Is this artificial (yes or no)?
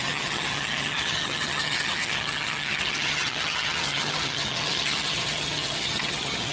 yes